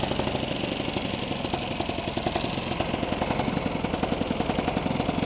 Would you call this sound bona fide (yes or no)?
yes